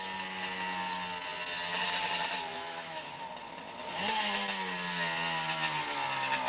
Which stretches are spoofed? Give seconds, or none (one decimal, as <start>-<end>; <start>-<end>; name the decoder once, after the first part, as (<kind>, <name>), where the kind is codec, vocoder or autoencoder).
2.5-3.2 (autoencoder, DAC-VAE)